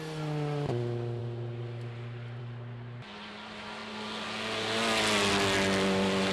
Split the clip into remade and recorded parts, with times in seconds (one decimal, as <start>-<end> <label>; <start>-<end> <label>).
0.0-6.3 recorded